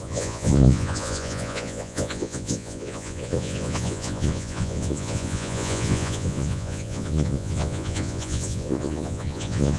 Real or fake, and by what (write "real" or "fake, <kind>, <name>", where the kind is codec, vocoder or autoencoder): fake, vocoder, Vocos